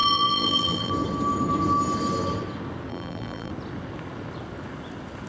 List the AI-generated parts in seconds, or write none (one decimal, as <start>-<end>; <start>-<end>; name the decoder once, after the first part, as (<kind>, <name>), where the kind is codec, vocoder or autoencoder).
0.0-0.9 (vocoder, BigVGAN v2); 2.9-3.5